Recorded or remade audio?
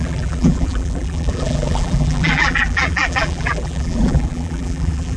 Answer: remade